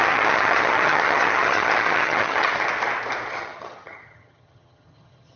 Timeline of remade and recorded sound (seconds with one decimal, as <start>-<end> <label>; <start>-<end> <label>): 0.0-2.5 remade; 2.5-3.3 recorded; 3.3-5.4 remade